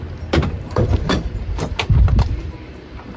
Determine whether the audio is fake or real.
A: fake